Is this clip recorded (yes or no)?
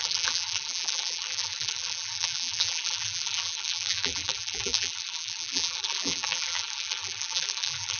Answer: no